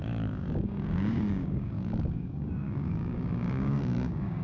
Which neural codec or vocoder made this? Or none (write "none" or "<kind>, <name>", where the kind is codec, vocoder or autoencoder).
codec, DAC